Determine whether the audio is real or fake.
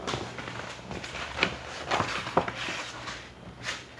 real